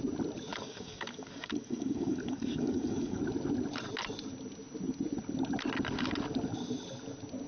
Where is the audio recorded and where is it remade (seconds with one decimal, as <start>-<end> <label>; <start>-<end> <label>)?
0.0-0.5 recorded; 0.5-3.2 remade; 3.2-7.5 recorded